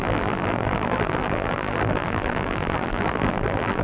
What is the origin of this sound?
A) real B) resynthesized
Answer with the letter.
B